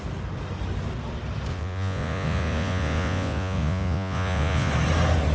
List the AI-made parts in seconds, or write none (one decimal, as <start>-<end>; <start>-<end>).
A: 1.5-4.7